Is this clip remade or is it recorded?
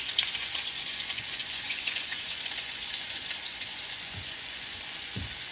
remade